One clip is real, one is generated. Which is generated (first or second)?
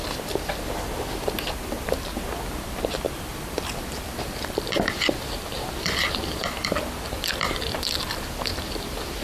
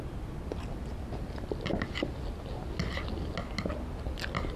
first